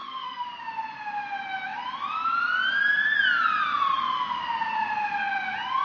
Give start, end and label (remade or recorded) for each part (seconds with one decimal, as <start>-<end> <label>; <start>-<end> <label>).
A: 0.0-0.6 remade; 0.6-5.8 recorded